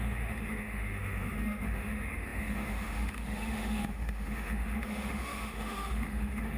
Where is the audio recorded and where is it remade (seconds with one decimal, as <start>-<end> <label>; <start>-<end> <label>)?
0.0-6.6 remade